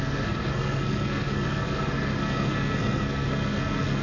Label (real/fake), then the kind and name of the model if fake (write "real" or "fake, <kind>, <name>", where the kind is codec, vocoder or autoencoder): fake, codec, SNAC